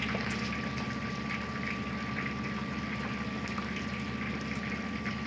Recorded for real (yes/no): yes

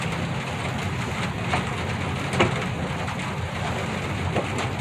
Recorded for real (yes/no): yes